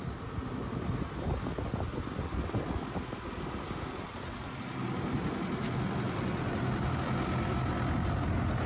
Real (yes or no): yes